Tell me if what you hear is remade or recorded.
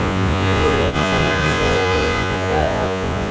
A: remade